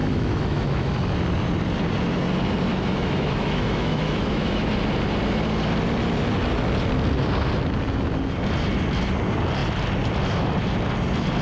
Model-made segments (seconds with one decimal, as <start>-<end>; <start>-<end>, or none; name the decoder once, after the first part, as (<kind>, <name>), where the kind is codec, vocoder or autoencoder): 0.0-0.9 (autoencoder, DAC-VAE); 2.7-4.7